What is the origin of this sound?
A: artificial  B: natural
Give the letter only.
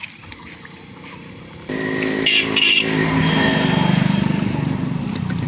B